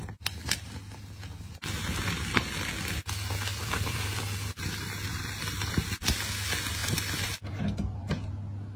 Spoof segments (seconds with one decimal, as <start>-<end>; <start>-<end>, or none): 3.5-4.2; 5.1-5.7; 6.8-8.1